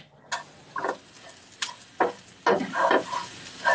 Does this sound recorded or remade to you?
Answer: recorded